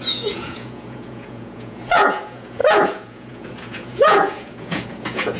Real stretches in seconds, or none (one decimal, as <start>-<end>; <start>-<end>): none